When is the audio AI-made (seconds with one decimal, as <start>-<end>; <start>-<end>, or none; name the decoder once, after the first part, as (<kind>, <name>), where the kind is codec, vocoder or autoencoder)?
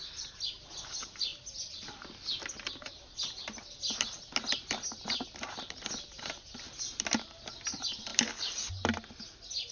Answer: none